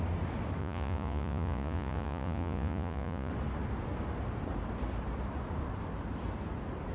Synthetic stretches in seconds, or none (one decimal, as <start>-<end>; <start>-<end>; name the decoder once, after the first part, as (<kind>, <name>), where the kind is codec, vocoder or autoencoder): 0.6-3.3 (vocoder, Vocos)